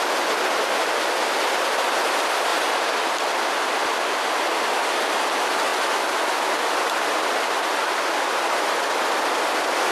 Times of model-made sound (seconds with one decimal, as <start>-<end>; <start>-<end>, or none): none